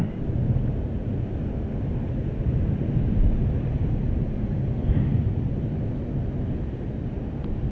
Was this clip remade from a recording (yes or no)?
no